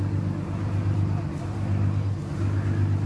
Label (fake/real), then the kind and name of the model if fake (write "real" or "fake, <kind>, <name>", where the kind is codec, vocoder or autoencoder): real